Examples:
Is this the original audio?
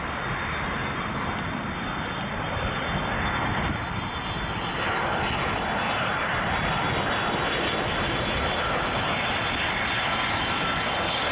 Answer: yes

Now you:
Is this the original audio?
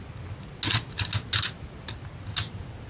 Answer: yes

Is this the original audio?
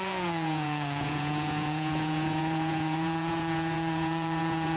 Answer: no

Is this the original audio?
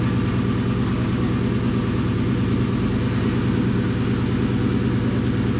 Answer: yes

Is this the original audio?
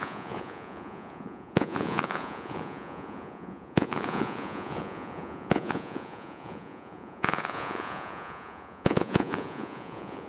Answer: no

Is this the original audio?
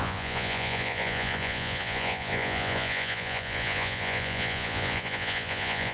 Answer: no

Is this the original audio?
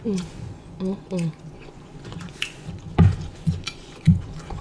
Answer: no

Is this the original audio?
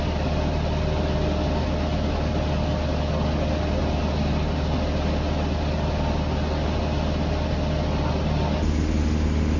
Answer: yes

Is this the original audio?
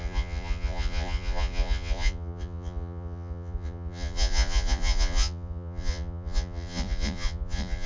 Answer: no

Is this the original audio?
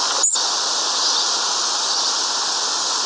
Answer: yes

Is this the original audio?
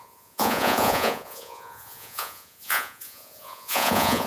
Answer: no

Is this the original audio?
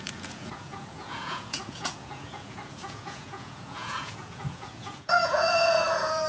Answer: no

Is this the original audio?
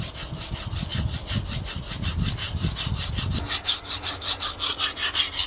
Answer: yes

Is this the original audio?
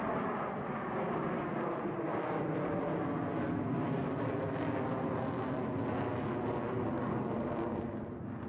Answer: yes